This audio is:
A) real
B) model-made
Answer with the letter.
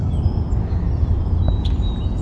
A